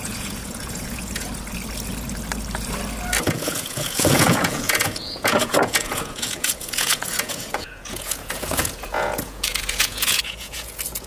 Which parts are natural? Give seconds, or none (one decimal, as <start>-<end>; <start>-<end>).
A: 1.3-3.2